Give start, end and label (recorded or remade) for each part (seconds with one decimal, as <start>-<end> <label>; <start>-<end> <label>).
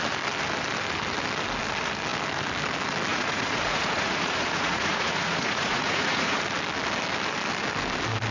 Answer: 0.0-3.1 recorded; 3.1-6.4 remade; 6.4-8.3 recorded